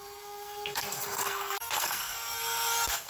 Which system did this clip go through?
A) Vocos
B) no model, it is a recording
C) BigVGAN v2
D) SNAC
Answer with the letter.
D